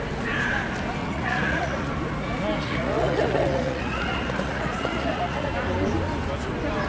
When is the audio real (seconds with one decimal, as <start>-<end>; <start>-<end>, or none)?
0.0-1.0; 1.9-2.6; 5.5-6.9